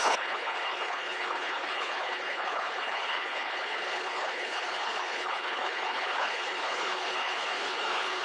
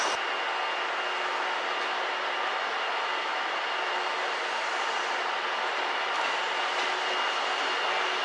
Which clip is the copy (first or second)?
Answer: first